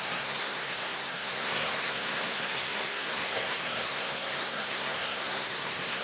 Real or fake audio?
fake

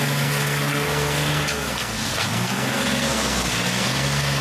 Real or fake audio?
fake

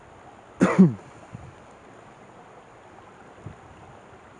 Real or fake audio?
real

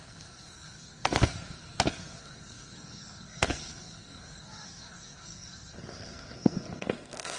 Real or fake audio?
fake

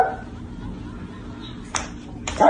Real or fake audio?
real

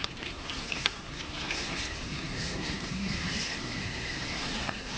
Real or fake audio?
fake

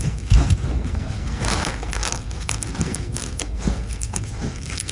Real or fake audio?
fake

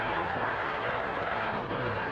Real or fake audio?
fake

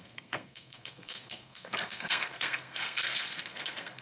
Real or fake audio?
fake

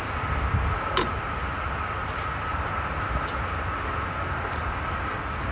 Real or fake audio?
real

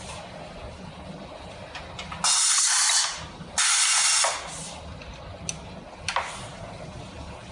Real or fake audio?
real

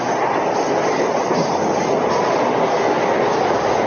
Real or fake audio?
real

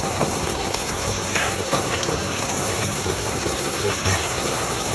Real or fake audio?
fake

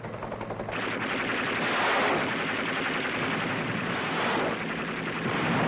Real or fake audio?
real